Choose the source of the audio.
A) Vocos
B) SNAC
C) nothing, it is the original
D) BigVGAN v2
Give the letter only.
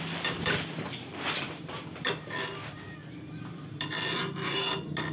C